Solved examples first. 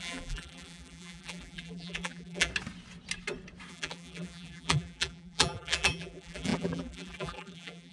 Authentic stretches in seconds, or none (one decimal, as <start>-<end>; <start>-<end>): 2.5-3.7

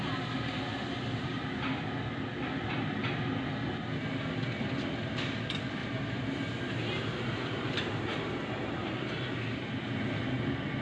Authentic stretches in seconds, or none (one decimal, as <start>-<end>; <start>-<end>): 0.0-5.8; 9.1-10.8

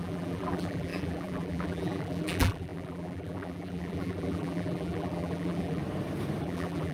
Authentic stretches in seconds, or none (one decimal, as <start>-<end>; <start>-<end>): 5.8-6.4